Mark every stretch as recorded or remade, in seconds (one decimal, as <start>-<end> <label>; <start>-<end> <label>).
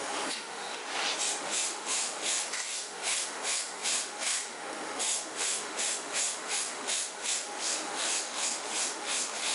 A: 0.0-0.8 remade; 0.8-1.4 recorded; 1.4-9.5 remade